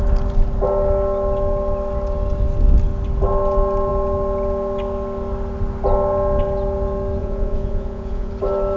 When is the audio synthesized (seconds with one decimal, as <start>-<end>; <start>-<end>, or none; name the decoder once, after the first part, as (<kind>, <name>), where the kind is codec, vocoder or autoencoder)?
7.2-8.3 (vocoder, Vocos)